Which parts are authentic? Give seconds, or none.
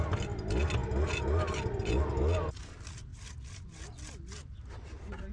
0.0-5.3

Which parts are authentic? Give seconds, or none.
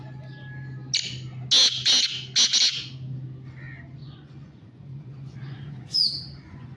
0.0-4.0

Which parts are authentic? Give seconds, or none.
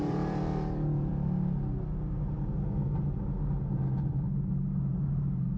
1.1-4.5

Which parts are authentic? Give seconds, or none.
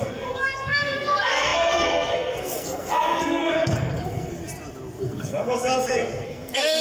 4.4-5.0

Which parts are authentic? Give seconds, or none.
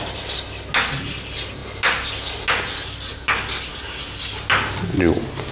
0.0-5.5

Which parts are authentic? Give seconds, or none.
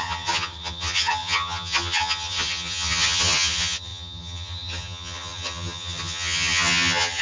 none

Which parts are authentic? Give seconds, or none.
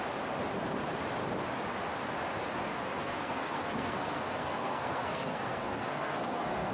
0.0-2.7